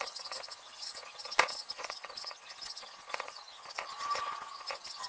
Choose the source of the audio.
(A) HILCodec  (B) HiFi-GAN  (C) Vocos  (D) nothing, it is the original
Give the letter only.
C